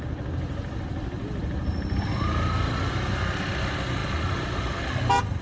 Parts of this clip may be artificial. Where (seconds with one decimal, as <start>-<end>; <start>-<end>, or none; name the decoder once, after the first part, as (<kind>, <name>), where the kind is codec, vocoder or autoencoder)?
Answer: none

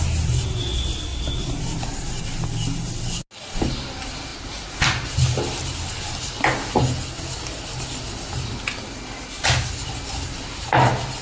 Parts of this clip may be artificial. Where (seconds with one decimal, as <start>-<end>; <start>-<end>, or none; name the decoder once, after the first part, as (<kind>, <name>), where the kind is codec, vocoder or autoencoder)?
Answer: none

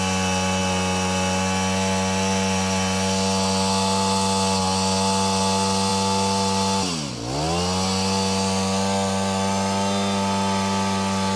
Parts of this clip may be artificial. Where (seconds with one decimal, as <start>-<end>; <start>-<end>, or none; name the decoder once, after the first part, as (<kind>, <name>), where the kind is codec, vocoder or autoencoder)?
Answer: none

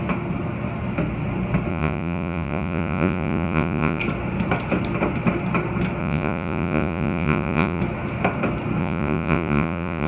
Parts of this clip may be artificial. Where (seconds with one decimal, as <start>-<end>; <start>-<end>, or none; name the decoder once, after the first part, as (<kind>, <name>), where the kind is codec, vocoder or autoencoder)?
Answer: 1.7-4.0 (vocoder, Vocos); 6.0-7.8; 8.8-10.1

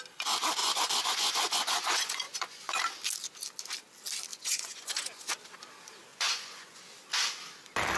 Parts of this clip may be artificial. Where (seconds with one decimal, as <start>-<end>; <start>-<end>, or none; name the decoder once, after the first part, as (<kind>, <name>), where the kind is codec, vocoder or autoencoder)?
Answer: 0.6-2.8 (vocoder, Vocos); 4.3-5.3; 6.1-6.8

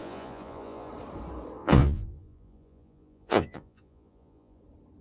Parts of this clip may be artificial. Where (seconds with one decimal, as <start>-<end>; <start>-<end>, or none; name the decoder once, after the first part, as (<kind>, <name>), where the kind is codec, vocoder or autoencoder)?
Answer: 0.0-0.9 (vocoder, Vocos); 1.6-4.6

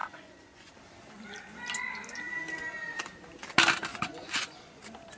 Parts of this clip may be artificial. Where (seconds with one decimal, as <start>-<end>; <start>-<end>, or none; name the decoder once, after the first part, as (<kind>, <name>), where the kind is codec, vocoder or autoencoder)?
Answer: 0.0-0.7 (vocoder, Vocos); 3.9-4.8

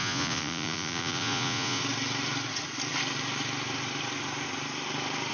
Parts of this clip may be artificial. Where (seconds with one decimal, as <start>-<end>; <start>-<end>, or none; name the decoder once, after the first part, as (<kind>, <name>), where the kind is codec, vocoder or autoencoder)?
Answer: 0.0-1.8 (vocoder, Vocos)